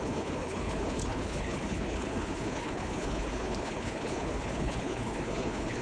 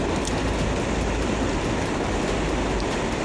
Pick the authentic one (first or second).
second